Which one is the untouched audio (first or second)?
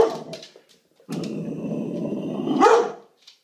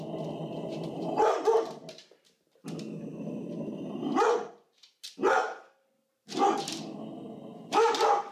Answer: second